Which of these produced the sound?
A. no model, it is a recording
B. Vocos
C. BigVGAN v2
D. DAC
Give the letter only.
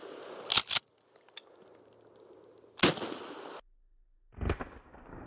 A